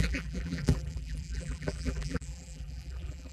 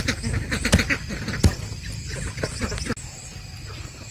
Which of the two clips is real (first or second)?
second